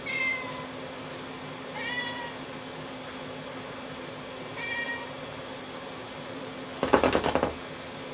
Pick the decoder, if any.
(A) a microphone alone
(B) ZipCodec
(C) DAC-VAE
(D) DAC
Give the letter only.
A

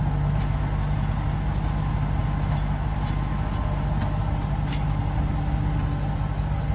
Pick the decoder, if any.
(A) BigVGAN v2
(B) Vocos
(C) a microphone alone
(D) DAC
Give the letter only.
C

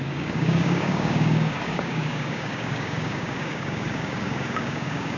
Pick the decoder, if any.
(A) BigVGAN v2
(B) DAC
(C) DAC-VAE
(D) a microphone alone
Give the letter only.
B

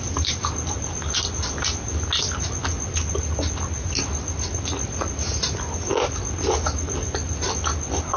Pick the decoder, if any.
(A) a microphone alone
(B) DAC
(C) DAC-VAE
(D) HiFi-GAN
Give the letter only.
A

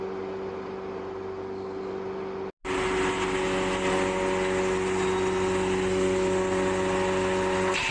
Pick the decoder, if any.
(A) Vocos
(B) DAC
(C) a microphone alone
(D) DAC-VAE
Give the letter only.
C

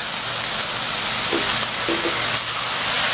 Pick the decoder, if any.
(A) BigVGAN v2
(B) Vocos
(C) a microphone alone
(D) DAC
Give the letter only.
C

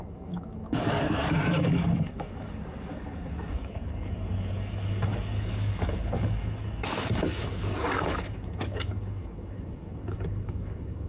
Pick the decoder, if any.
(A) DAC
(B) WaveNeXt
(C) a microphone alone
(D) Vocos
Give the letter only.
A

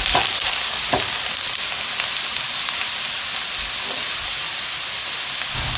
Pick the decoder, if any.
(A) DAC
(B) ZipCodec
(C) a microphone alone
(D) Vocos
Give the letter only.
C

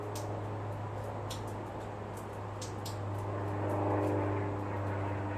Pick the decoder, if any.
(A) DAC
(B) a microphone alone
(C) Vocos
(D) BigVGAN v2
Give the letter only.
B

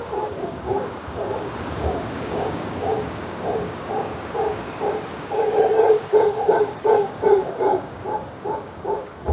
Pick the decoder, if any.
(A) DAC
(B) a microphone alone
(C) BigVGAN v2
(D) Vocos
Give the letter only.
A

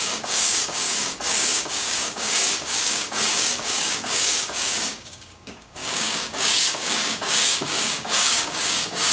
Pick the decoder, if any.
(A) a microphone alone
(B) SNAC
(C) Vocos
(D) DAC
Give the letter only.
D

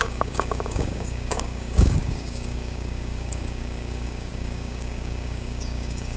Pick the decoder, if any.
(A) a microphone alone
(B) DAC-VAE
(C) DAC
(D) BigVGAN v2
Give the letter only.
C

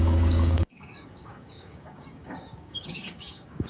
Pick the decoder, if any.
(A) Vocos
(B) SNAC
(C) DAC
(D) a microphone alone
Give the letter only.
C